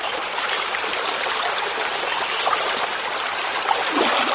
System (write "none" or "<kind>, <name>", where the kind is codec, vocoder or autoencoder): none